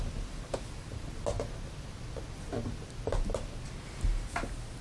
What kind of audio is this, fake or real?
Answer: real